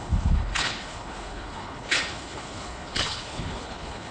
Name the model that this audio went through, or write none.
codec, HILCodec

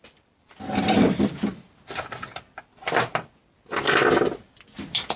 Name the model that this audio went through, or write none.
none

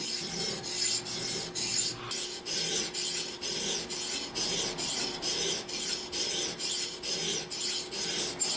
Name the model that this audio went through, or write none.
none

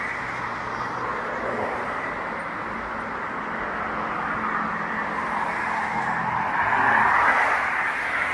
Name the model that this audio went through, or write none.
none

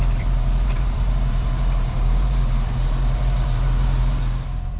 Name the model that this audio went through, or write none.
vocoder, BigVGAN v2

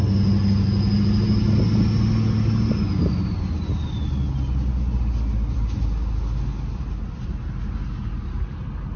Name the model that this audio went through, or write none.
none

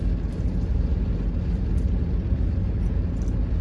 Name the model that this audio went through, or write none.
none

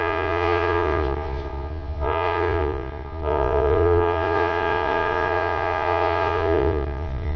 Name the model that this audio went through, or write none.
vocoder, Vocos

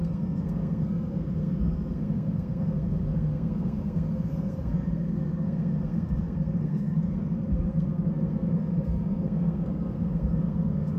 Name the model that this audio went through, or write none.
codec, SNAC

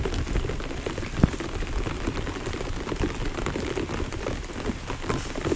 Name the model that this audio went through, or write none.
none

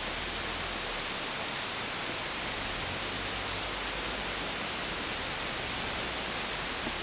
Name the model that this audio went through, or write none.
none